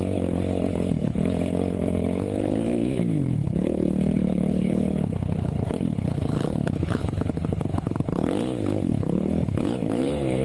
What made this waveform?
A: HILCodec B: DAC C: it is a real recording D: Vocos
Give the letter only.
A